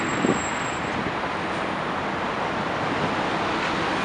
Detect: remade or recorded recorded